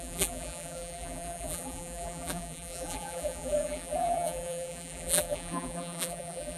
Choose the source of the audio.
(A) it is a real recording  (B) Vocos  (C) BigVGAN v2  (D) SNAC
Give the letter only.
C